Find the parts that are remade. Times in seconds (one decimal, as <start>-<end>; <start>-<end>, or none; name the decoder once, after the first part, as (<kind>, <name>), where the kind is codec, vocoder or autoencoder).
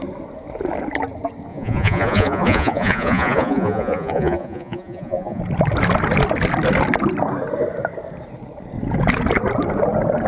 1.5-5.4 (vocoder, Vocos)